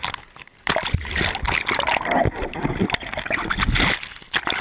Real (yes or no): yes